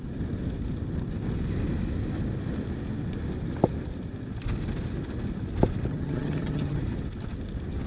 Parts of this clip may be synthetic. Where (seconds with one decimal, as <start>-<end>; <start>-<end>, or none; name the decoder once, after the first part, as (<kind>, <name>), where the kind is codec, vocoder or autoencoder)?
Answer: 5.9-6.8 (vocoder, HiFi-GAN)